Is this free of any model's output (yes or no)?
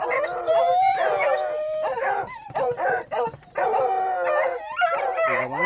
yes